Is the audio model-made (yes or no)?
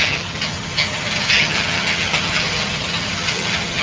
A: yes